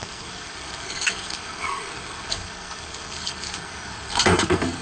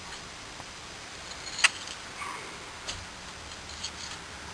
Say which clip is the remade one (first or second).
first